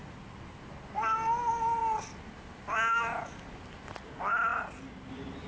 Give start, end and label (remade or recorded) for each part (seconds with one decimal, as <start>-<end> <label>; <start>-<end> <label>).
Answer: 0.0-5.5 recorded